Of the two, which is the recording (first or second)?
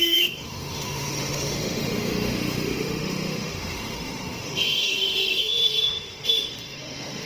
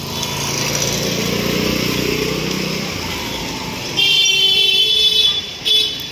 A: second